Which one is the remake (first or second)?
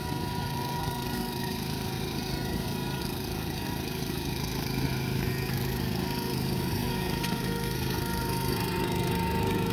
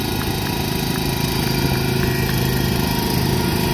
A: first